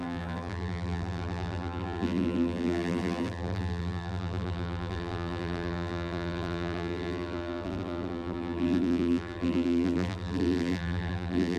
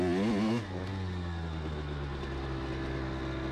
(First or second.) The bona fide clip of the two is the second